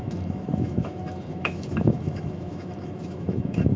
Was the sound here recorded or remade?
remade